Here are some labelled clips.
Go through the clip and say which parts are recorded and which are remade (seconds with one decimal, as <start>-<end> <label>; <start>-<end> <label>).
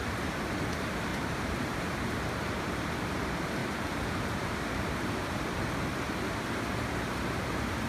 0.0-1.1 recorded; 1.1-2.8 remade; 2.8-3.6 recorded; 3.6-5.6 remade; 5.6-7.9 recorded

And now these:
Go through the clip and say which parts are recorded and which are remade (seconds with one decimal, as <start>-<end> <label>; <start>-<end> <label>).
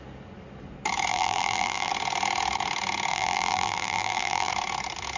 0.0-1.1 recorded; 1.1-1.9 remade; 1.9-3.1 recorded; 3.1-4.5 remade; 4.5-5.2 recorded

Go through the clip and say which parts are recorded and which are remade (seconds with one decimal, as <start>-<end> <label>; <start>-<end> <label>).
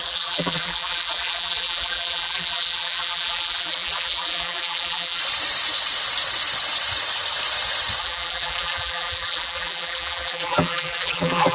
0.0-5.2 remade; 5.2-8.0 recorded; 8.0-11.5 remade